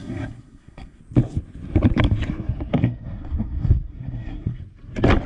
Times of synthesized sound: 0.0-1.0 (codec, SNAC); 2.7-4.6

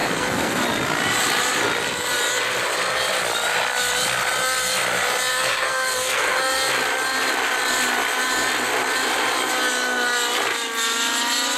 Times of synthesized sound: 0.0-0.6 (codec, SNAC); 5.3-6.4

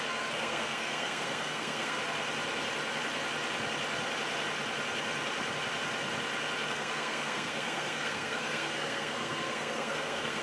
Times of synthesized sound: 0.0-2.0 (codec, SNAC); 6.7-10.4

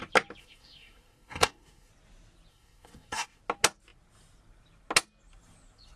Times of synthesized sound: 0.4-1.9 (codec, SNAC); 2.5-3.4

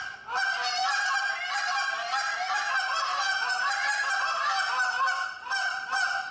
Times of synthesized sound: none

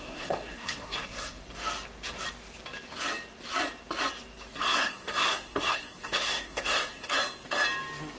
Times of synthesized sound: 0.0-1.4 (codec, SNAC); 4.6-7.2

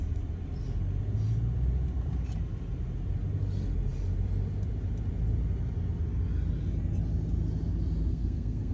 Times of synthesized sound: 8.1-8.7 (codec, SNAC)

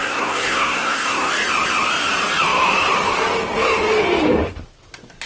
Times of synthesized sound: 0.0-1.3 (codec, SNAC)